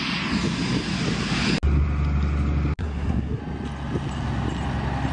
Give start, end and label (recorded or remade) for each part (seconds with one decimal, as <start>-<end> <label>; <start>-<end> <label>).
0.0-2.8 recorded; 2.8-3.4 remade; 3.4-5.1 recorded